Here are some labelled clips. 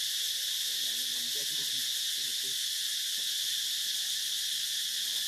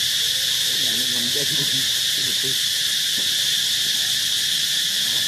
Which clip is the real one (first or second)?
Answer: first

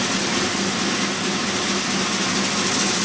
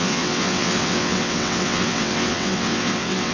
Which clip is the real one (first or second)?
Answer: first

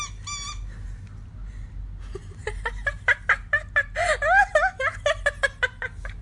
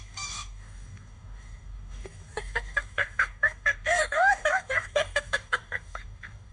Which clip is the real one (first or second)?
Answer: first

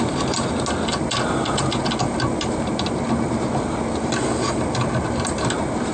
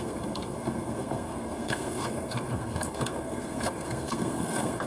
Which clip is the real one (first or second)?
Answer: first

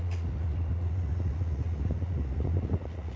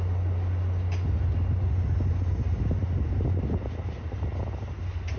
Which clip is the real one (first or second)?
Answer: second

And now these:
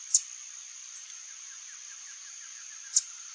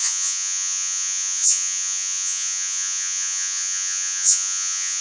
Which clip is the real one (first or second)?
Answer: first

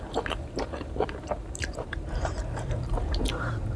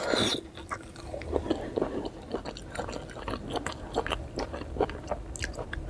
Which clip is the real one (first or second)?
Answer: second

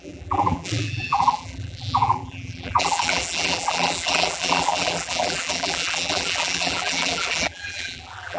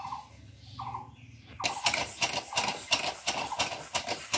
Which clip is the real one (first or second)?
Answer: second